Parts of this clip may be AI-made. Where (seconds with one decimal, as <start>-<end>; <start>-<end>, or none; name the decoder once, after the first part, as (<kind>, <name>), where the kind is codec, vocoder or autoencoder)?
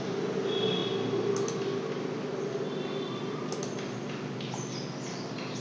none